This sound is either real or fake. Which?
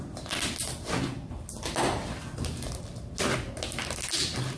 real